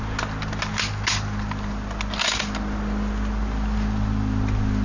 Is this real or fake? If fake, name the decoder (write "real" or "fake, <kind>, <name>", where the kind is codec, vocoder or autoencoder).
real